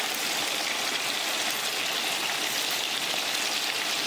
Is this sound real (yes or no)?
yes